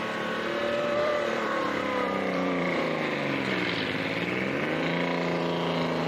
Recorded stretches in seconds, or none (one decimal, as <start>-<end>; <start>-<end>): 0.0-0.6; 2.8-6.1